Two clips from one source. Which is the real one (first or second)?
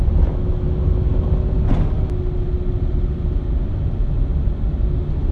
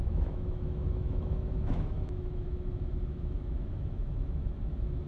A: first